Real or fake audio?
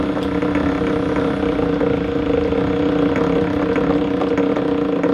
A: real